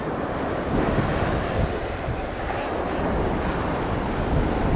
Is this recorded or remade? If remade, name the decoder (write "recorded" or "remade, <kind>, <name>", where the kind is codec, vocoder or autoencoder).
recorded